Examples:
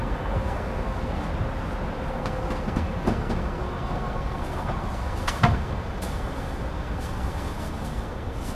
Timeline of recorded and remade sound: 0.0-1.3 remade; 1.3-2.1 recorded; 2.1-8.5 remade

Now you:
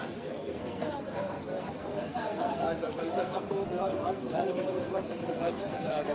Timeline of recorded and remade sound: 0.0-6.1 remade

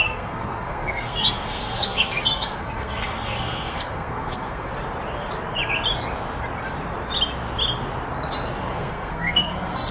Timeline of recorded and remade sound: 0.0-4.7 remade; 4.7-8.6 recorded; 8.6-9.9 remade

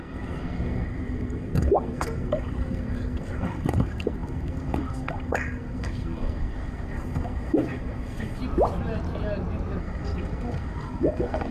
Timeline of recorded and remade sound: 0.0-8.4 remade; 8.4-9.8 recorded; 9.8-11.5 remade

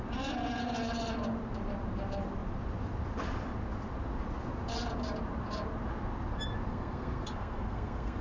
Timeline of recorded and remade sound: 0.0-6.7 recorded; 6.7-8.2 remade

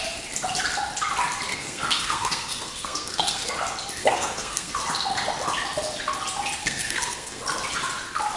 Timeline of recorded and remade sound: 0.0-1.5 recorded; 1.5-3.5 remade; 3.5-4.0 recorded; 4.0-4.7 remade; 4.7-6.6 recorded; 6.6-7.4 remade; 7.4-8.4 recorded

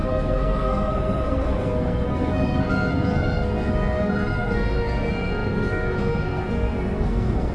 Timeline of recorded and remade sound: 0.0-7.5 remade